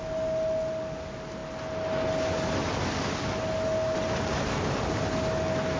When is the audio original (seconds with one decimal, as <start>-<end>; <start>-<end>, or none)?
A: 0.0-5.8